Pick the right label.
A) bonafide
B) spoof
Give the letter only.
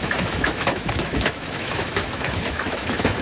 B